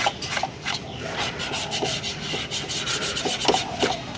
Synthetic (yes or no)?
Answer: no